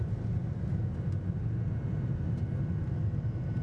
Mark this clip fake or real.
real